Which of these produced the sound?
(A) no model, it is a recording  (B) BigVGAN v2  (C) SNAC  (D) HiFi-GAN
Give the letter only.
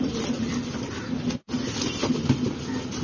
A